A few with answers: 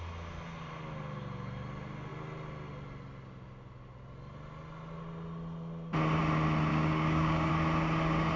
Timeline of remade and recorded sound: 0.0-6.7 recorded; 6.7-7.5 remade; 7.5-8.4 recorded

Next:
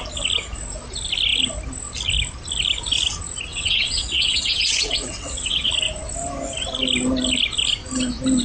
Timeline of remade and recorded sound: 0.0-3.5 recorded; 3.5-5.7 remade; 5.7-8.4 recorded

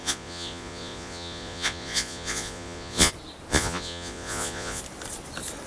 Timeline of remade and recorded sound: 0.0-3.1 remade; 3.1-3.5 recorded; 3.5-4.8 remade; 4.8-5.7 recorded

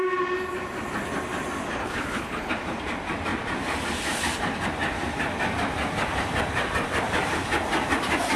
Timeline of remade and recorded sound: 0.0-1.8 recorded; 1.8-2.5 remade; 2.5-8.4 recorded